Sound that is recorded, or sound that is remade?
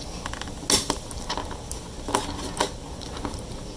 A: recorded